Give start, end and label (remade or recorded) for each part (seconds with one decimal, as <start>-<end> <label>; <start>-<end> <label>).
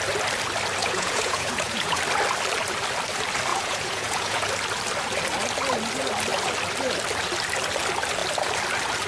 0.0-0.8 recorded; 0.8-2.0 remade; 2.0-3.5 recorded; 3.5-4.5 remade; 4.5-9.1 recorded